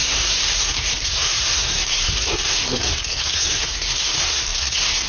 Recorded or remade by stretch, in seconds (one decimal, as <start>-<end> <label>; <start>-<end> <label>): 0.0-5.1 remade